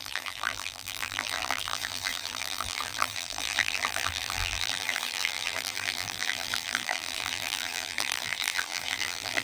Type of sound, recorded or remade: remade